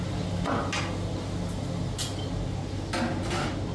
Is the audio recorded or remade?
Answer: recorded